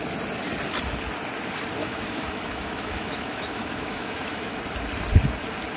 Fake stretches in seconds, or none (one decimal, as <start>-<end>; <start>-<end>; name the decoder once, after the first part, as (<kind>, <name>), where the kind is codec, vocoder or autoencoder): 1.8-4.6 (autoencoder, DAC-VAE)